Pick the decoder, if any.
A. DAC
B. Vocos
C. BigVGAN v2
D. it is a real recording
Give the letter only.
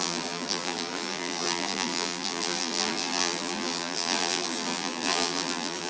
C